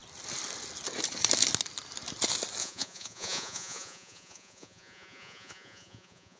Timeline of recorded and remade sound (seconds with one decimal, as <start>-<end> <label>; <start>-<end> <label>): 0.0-2.6 recorded; 2.6-6.4 remade